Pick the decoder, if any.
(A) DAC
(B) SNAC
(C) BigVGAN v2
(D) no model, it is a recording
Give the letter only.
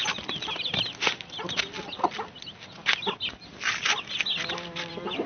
D